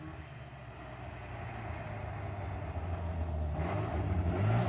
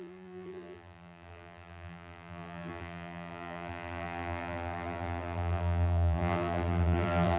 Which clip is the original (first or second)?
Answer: first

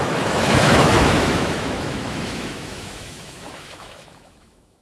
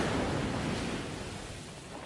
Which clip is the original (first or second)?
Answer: second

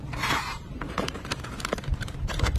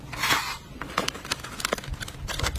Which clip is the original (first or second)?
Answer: second